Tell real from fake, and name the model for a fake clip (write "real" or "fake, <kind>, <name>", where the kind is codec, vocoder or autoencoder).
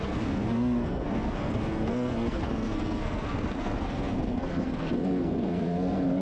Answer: fake, codec, SNAC